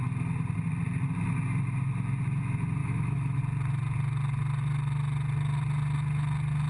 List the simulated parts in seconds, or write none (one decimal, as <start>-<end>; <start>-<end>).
2.8-3.4